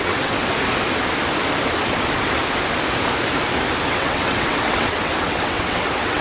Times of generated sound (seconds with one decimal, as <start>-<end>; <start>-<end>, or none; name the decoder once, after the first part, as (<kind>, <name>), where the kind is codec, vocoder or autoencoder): 0.0-0.4 (vocoder, WaveNeXt); 3.9-6.2